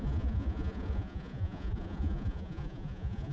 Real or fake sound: fake